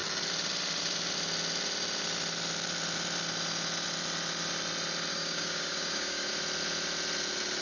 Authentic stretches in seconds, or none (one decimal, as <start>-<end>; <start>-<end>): 0.0-5.1; 6.3-7.6